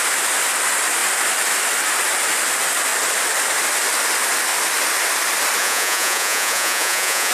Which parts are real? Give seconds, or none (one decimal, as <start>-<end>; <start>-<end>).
0.0-5.6